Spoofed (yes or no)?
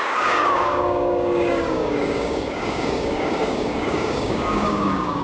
yes